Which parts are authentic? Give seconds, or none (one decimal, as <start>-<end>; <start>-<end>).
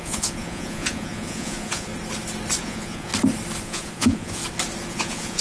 1.9-2.6; 3.1-3.6; 4.4-4.9